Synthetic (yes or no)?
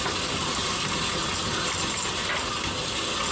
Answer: no